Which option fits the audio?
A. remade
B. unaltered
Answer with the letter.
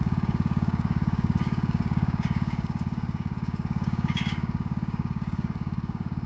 A